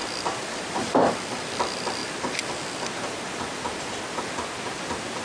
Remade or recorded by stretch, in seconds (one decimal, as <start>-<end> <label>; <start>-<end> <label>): 0.0-0.7 recorded; 0.7-2.0 remade; 2.0-4.2 recorded; 4.2-5.2 remade